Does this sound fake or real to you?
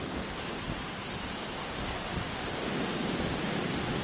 real